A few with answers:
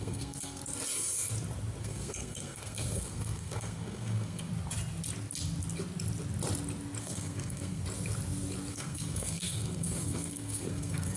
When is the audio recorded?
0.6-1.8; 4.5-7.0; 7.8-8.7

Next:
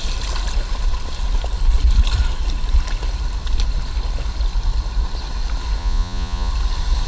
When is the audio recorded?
0.0-5.8; 6.5-7.1

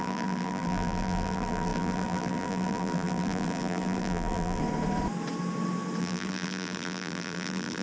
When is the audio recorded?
4.6-6.0

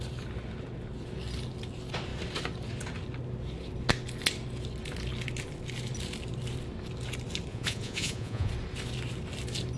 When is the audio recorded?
0.0-7.5; 8.5-9.8

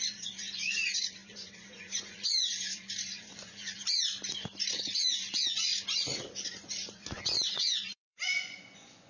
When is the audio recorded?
3.8-5.1; 5.7-6.4

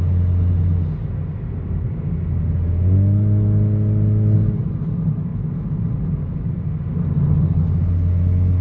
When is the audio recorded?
0.0-8.6

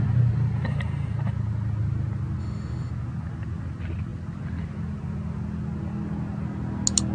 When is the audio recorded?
0.0-2.4; 2.9-7.1